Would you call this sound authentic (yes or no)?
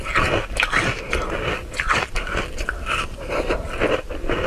yes